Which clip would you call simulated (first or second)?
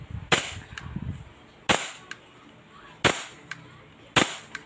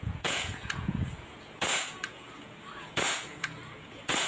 second